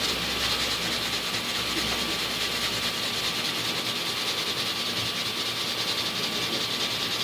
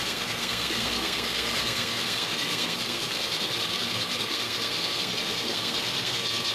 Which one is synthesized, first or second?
second